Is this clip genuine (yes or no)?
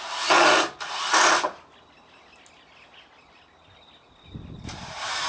yes